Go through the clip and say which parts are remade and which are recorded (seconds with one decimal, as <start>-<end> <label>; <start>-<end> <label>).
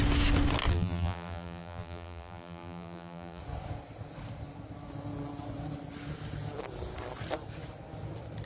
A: 0.0-0.7 recorded; 0.7-3.4 remade; 3.4-8.5 recorded